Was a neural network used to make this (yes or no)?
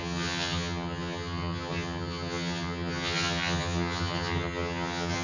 yes